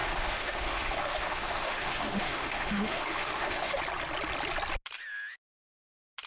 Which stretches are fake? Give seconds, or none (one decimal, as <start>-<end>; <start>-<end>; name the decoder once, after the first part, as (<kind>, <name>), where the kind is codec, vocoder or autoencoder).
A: 0.0-3.8 (autoencoder, DAC-VAE)